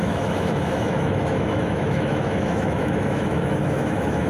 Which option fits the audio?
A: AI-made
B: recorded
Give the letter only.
A